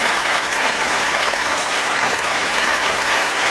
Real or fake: fake